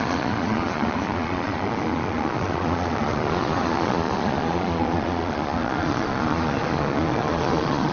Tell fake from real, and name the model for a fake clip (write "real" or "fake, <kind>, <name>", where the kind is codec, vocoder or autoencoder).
fake, vocoder, Vocos